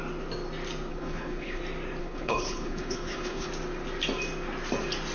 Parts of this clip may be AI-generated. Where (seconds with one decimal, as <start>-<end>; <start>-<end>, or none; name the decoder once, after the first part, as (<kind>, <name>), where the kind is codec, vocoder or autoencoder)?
0.9-1.6 (codec, HILCodec); 2.0-3.5